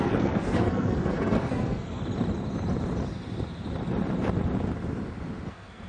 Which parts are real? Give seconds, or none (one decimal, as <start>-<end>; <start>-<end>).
2.0-5.5